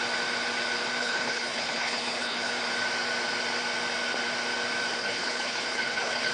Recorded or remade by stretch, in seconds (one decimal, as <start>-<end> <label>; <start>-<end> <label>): 0.0-1.0 recorded; 1.0-2.5 remade; 2.5-5.0 recorded; 5.0-6.3 remade